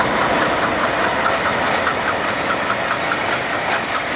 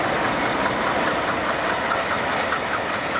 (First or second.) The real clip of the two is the first